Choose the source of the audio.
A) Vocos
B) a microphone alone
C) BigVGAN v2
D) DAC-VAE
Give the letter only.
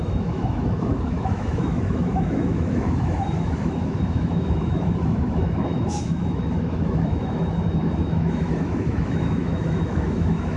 D